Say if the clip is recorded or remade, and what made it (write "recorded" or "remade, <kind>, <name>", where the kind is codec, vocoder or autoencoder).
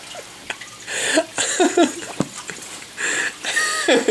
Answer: remade, vocoder, BigVGAN v2